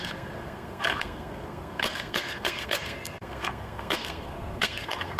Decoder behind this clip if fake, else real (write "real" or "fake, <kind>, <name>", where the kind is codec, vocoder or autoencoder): fake, codec, SNAC